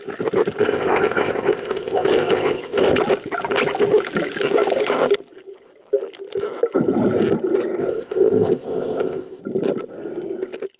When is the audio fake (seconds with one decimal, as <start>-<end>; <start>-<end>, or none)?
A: 0.6-2.9; 7.8-9.4